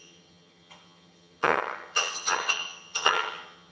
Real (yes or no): no